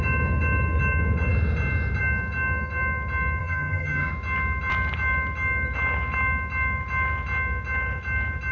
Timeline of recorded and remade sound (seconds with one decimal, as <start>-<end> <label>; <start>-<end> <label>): 0.0-3.4 recorded; 3.4-4.1 remade; 4.1-8.5 recorded